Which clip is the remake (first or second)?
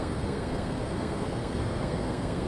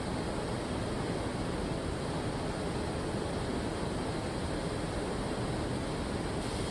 first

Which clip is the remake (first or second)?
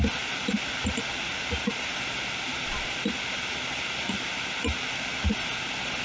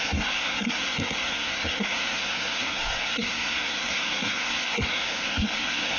second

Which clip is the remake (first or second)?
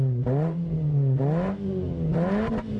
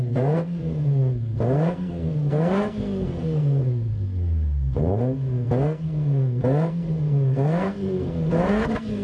second